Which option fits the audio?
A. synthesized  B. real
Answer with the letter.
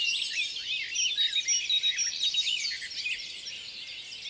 B